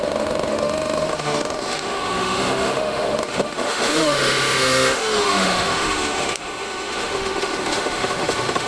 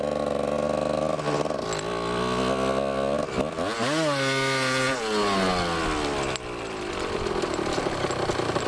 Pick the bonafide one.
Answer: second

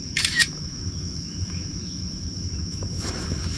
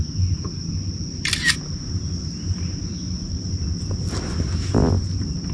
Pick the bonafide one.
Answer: second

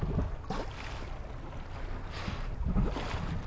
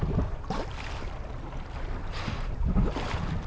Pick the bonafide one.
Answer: first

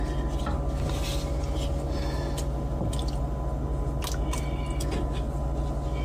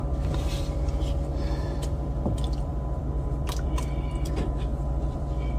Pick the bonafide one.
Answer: first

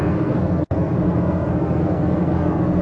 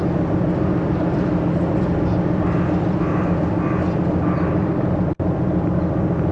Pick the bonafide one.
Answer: second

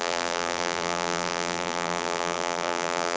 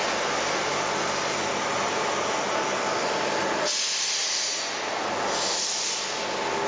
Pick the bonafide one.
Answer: second